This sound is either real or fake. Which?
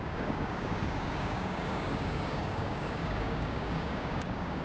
fake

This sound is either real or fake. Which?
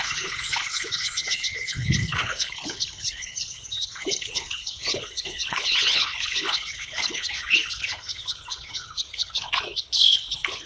fake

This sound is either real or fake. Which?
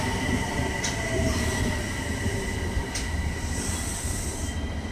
real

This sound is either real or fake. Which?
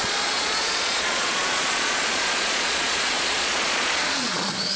fake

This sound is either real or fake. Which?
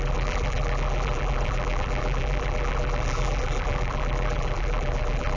fake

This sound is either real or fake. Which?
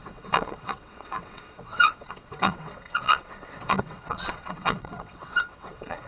fake